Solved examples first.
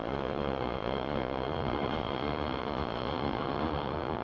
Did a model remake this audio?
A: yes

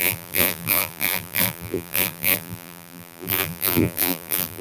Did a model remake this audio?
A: yes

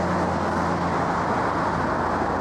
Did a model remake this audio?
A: no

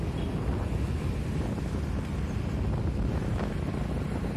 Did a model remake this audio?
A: no